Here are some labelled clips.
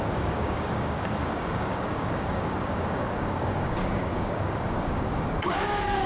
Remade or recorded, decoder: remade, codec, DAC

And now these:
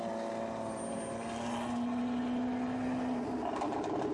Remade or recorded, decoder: recorded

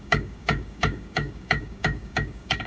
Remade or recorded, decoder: remade, codec, DAC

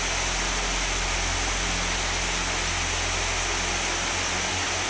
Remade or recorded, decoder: recorded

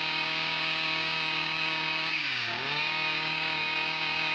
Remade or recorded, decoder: remade, codec, DAC